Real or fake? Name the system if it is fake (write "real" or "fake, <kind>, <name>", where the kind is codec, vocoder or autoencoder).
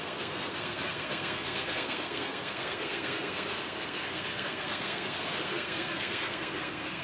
fake, codec, SNAC